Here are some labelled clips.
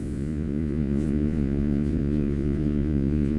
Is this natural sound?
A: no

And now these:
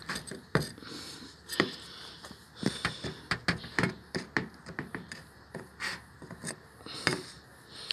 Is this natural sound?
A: yes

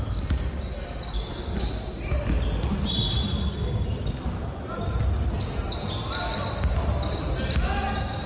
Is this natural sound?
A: yes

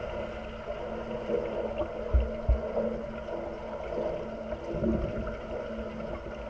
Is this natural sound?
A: yes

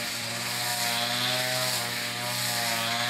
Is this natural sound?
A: yes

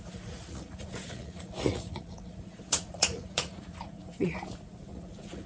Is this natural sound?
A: no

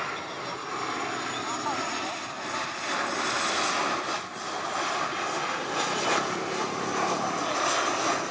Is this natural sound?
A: yes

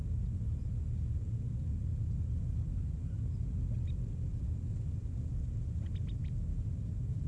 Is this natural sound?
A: yes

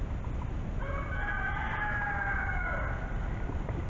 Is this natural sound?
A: yes